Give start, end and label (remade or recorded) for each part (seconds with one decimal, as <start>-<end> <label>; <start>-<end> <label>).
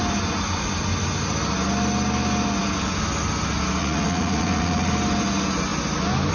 0.0-3.8 recorded; 3.8-4.9 remade; 4.9-6.3 recorded